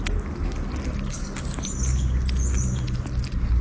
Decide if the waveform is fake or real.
real